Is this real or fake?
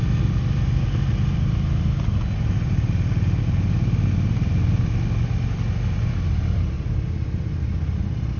real